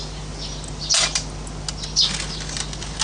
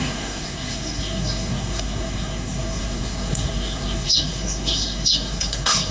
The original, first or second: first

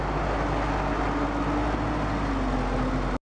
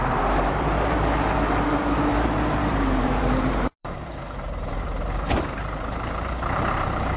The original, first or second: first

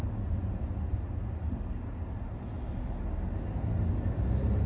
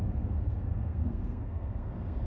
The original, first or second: first